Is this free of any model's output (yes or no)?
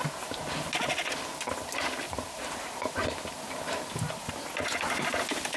yes